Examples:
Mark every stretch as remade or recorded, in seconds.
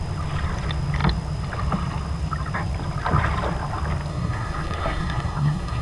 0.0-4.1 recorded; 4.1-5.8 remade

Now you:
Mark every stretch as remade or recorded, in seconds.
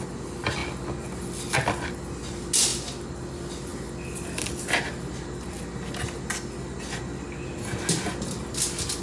0.0-9.0 recorded